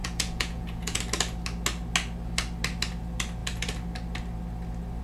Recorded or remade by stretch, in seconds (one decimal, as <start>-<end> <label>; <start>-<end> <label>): 0.0-1.0 remade; 1.0-5.0 recorded